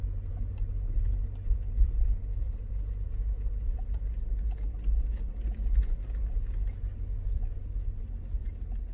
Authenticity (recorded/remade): recorded